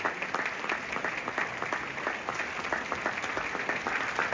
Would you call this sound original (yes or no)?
yes